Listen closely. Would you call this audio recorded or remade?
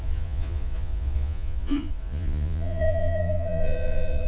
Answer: remade